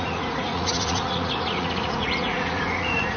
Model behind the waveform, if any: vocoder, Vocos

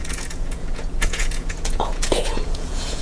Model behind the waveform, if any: vocoder, Vocos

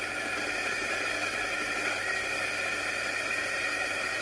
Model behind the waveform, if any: none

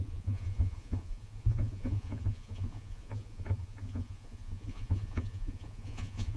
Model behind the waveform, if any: vocoder, Vocos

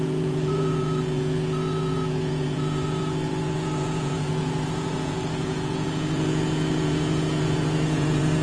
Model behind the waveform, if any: vocoder, Vocos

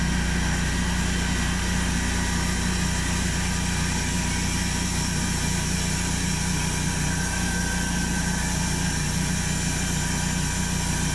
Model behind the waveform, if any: none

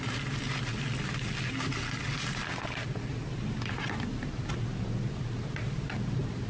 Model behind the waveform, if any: none